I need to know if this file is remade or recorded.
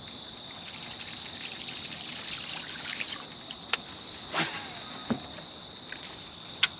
recorded